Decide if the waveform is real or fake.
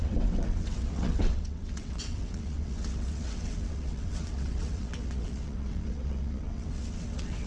fake